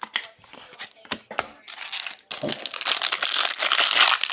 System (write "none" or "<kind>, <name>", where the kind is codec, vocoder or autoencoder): none